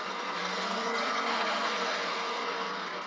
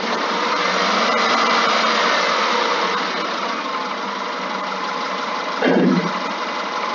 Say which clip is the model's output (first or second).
first